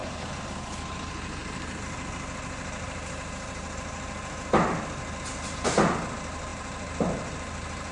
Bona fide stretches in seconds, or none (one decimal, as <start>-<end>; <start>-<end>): 0.0-7.9